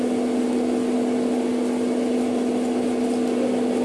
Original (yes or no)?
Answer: yes